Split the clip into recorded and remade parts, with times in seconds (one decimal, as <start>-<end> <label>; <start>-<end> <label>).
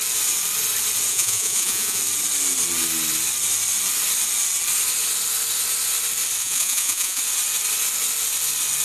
0.0-1.1 recorded; 1.1-2.0 remade; 2.0-6.4 recorded; 6.4-7.2 remade; 7.2-8.8 recorded